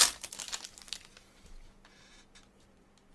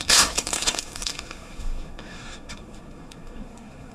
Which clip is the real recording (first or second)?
first